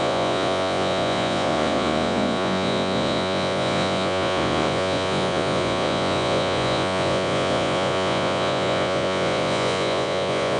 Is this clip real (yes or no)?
no